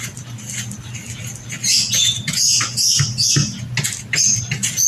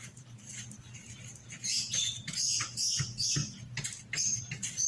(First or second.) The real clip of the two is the first